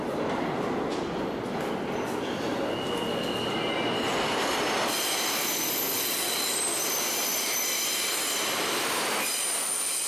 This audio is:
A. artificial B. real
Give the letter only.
B